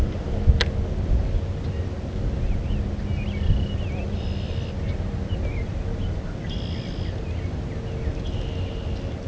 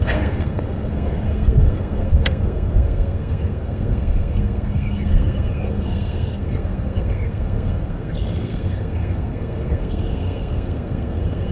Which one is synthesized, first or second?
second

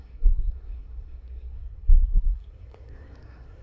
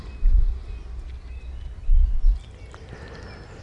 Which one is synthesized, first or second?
first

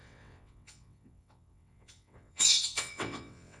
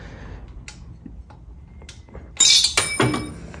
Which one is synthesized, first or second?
first